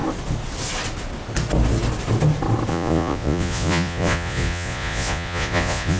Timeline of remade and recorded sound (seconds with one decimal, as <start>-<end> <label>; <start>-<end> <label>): 0.0-2.7 recorded; 2.7-6.0 remade